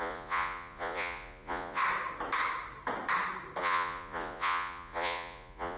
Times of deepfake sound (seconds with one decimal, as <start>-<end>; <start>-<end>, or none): 0.0-1.8; 3.6-5.8